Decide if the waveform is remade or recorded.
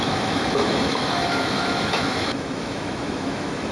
remade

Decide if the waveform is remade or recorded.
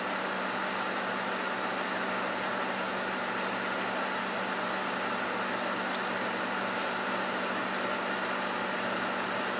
recorded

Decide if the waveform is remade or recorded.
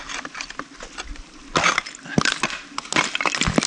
recorded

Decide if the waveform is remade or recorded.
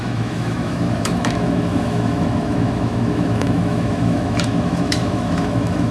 remade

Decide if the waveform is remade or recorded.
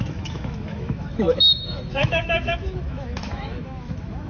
remade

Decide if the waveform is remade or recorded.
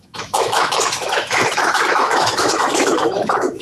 remade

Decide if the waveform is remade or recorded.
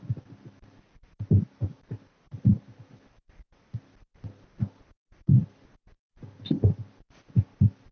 recorded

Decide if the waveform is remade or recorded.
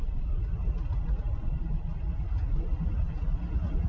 recorded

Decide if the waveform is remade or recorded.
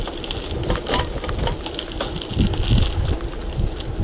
recorded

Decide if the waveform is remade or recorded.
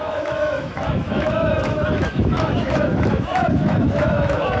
remade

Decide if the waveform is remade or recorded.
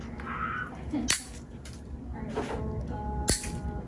recorded